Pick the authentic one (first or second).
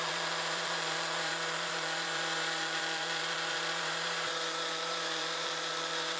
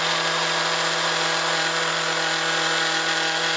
second